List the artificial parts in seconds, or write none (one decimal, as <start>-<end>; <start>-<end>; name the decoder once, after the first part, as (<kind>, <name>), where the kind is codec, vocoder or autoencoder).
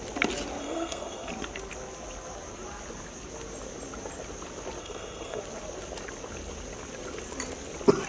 0.6-1.3 (codec, SNAC); 4.8-5.4